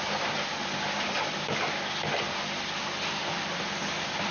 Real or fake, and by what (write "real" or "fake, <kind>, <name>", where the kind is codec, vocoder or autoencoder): real